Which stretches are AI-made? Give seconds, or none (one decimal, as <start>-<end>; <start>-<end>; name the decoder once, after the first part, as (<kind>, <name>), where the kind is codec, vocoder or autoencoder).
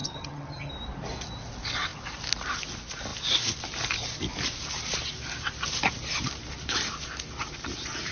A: 0.0-0.7 (vocoder, HiFi-GAN)